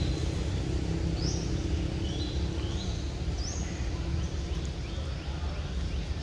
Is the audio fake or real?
real